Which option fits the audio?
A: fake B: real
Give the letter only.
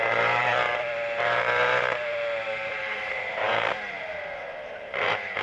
A